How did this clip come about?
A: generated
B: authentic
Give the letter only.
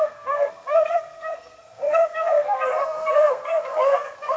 A